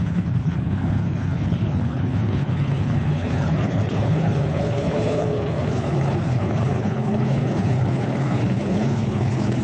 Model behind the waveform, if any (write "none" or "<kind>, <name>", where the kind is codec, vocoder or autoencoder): codec, HILCodec